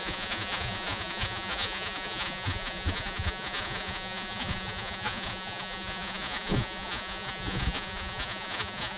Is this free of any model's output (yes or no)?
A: no